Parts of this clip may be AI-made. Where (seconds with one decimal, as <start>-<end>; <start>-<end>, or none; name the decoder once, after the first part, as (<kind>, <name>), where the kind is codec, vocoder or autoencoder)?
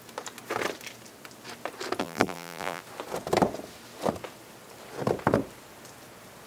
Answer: 2.0-2.8 (vocoder, BigVGAN v2)